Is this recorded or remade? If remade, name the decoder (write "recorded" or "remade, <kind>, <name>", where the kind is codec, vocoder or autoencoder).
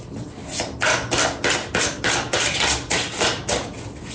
recorded